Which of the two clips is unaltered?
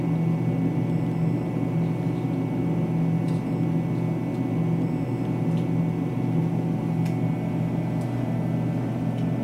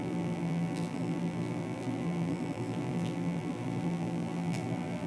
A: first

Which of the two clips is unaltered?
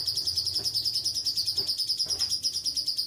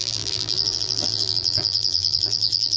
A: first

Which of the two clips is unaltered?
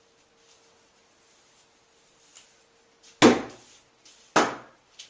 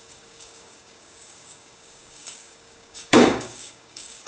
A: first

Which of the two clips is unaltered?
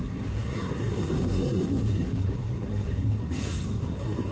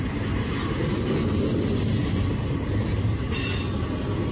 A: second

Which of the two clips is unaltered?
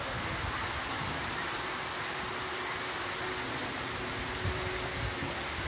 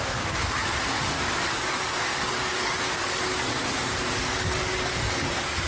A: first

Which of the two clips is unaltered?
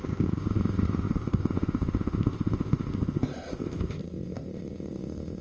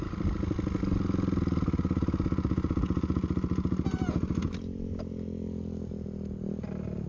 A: second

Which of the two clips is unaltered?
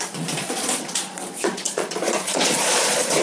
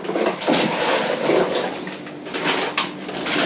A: second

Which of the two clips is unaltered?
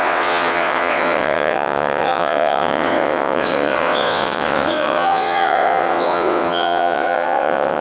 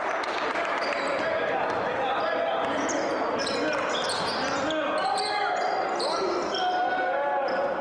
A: second